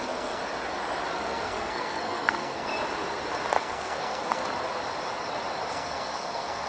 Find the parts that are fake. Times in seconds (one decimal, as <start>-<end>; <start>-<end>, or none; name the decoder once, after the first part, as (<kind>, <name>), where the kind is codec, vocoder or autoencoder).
0.0-0.4 (codec, SNAC); 1.1-2.7; 3.6-4.4; 5.7-6.7

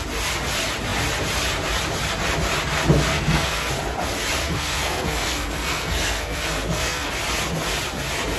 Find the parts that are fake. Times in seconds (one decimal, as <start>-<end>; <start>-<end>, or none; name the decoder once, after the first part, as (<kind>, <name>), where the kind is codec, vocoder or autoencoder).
3.1-3.7 (codec, SNAC); 4.4-7.1

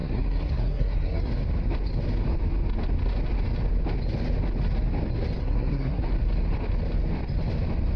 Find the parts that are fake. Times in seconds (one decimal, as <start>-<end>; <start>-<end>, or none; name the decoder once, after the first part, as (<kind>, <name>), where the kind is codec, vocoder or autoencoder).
0.0-1.3 (codec, SNAC); 5.4-6.0

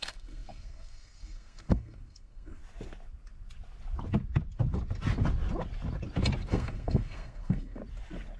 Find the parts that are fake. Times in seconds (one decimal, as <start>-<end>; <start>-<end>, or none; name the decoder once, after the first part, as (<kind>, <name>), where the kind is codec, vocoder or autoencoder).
0.0-2.6 (codec, SNAC); 6.5-7.8

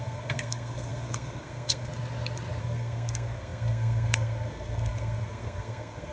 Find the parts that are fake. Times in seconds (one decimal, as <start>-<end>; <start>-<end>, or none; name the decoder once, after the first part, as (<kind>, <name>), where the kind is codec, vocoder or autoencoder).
0.0-1.9 (codec, SNAC); 2.6-6.1

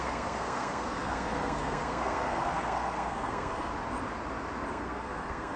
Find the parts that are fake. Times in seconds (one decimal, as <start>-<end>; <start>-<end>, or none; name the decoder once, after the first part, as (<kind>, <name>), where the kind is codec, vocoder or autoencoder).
0.0-3.7 (codec, SNAC); 4.7-5.6

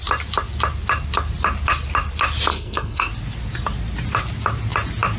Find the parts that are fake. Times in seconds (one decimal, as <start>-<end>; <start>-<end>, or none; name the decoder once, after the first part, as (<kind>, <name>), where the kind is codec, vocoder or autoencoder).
2.5-3.1 (codec, SNAC)